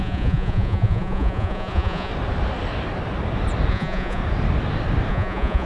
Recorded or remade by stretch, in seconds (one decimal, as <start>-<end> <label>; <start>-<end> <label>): 0.0-2.1 remade; 2.1-3.7 recorded; 3.7-4.2 remade; 4.2-5.1 recorded; 5.1-5.7 remade